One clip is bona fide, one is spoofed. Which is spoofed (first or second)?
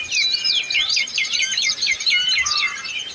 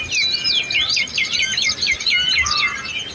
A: first